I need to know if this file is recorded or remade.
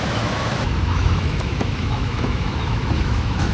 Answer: remade